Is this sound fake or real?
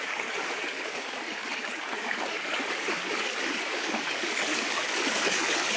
fake